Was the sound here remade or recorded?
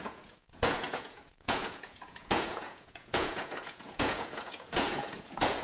remade